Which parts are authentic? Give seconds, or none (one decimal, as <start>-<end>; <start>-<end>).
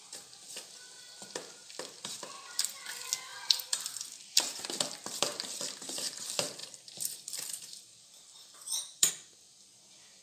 0.0-1.6; 2.9-3.3; 4.6-6.6; 9.1-10.2